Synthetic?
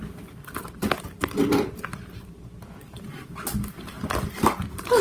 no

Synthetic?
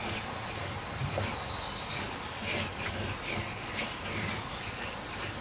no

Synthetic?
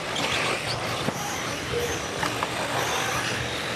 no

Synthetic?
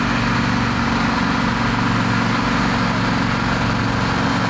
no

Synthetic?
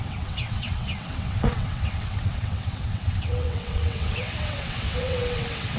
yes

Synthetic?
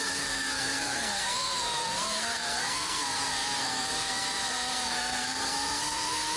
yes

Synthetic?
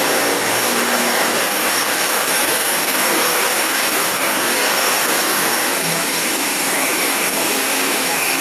yes